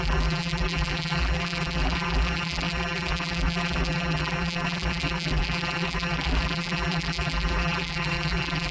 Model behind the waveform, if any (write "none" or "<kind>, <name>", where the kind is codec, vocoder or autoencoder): vocoder, BigVGAN v2